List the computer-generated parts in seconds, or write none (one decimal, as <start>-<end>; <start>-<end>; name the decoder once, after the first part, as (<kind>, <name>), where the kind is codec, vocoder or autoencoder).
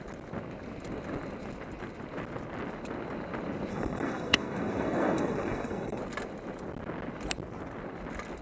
3.7-6.0 (codec, SNAC)